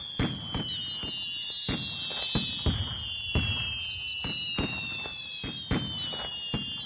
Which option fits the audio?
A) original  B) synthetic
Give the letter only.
A